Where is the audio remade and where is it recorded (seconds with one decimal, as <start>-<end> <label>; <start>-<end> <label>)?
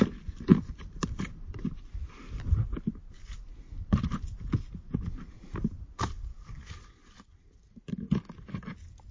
0.0-9.1 recorded